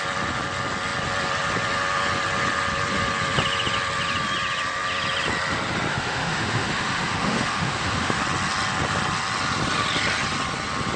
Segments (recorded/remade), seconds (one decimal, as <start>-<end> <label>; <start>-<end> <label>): 0.0-5.9 recorded; 5.9-8.2 remade; 8.2-11.0 recorded